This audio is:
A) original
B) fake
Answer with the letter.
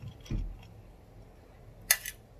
A